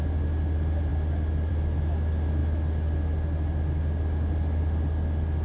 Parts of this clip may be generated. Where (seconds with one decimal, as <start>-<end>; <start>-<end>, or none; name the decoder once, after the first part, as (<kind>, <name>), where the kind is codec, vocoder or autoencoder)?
none